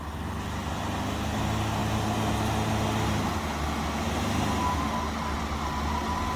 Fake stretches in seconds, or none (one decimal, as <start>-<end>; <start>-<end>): none